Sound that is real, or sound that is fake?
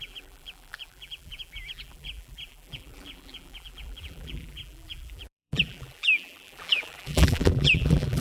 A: fake